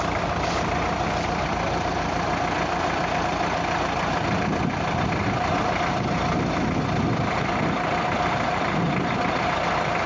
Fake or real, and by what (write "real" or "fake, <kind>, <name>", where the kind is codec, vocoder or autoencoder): real